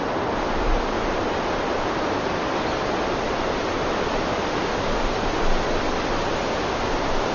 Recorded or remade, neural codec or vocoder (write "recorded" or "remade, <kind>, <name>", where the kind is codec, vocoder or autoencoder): recorded